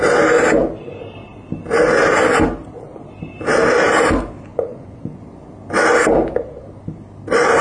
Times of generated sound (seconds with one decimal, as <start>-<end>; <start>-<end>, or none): 4.5-5.2